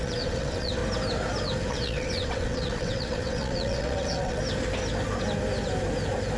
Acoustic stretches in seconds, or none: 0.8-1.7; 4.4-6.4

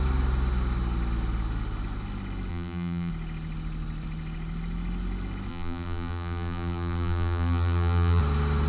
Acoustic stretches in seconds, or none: 0.0-2.5; 3.1-5.5; 8.2-8.7

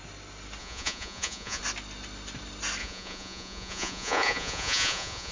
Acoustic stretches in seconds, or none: 0.0-0.6; 1.6-2.8

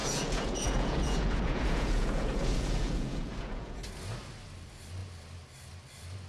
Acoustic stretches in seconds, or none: 3.8-6.3